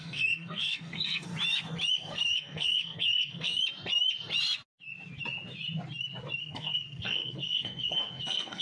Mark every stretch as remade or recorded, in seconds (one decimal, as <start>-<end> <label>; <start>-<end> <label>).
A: 0.0-1.3 remade; 1.3-1.9 recorded; 1.9-3.6 remade; 3.6-6.4 recorded; 6.4-8.6 remade

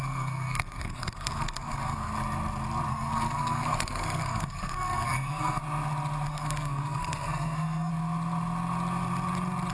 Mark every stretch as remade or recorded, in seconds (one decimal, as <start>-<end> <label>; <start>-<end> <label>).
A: 0.0-2.1 remade; 2.1-2.9 recorded; 2.9-5.6 remade; 5.6-6.3 recorded; 6.3-7.9 remade; 7.9-9.7 recorded